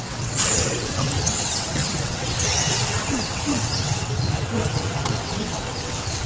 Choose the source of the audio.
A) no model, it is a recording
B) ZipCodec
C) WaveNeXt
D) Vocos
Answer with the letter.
C